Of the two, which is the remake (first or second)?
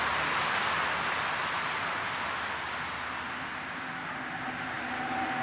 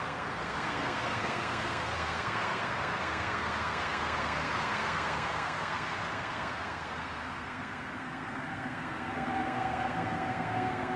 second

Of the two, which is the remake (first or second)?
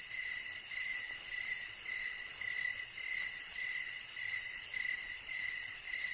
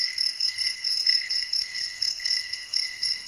second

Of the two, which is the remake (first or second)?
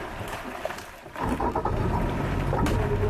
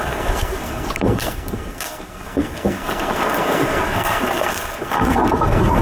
second